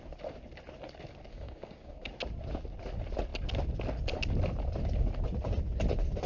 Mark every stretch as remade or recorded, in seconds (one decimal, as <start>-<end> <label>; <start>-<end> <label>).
0.0-1.3 recorded; 1.3-2.1 remade; 2.1-6.3 recorded